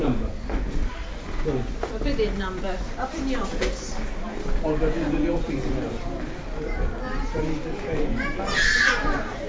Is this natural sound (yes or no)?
yes